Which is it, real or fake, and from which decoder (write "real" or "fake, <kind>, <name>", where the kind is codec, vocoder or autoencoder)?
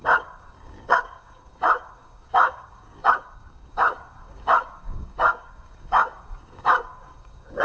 fake, codec, DAC